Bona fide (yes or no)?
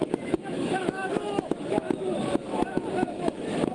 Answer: no